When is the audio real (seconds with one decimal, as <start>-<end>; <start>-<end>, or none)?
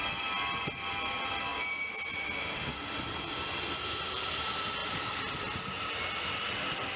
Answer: 0.0-4.8; 5.3-7.0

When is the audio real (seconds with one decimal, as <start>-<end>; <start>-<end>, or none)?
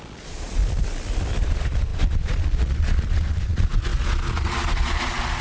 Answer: 0.6-1.4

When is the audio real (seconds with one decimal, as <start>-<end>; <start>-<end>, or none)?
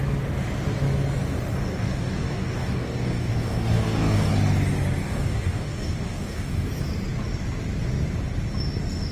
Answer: 0.0-1.5; 4.3-5.0; 6.7-9.1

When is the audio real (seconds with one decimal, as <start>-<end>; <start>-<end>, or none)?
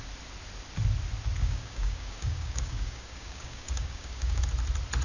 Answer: 0.0-1.4; 4.4-5.0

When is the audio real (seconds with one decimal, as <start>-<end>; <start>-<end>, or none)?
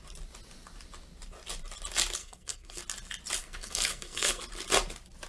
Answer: 0.0-2.2; 2.8-3.4; 4.4-5.3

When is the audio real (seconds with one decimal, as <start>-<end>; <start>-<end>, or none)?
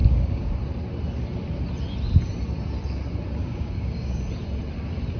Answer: 0.5-3.4; 4.2-5.2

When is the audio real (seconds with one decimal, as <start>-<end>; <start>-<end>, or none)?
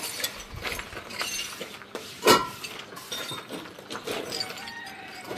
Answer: 0.0-2.4; 4.0-5.4